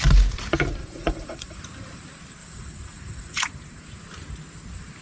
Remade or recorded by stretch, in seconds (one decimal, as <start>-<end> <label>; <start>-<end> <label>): 0.0-0.8 recorded; 0.8-1.6 remade; 1.6-2.4 recorded; 2.4-3.5 remade; 3.5-5.0 recorded